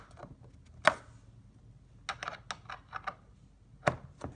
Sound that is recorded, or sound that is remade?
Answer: recorded